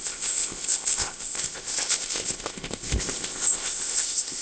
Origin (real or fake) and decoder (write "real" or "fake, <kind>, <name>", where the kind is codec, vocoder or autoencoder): fake, codec, ZipCodec